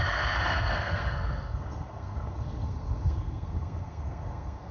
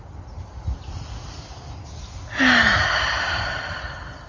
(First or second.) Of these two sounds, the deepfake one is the first